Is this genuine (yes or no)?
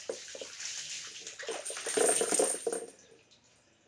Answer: yes